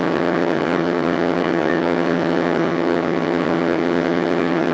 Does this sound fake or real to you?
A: fake